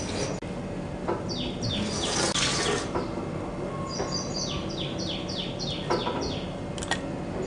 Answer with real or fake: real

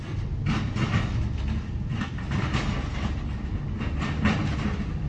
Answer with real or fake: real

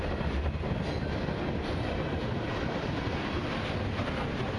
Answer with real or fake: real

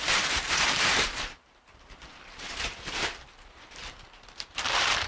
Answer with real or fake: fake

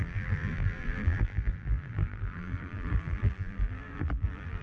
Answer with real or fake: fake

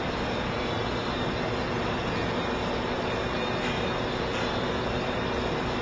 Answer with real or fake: real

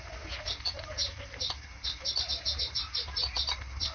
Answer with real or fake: real